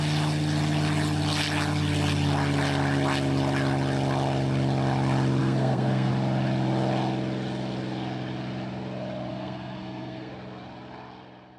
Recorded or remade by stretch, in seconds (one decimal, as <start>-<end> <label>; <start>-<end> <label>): 0.0-5.4 recorded; 5.4-6.1 remade; 6.1-9.3 recorded; 9.3-10.3 remade; 10.3-11.6 recorded